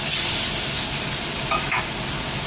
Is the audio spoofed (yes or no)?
no